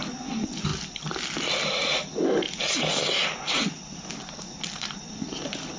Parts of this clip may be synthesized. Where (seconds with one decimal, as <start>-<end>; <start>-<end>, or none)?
none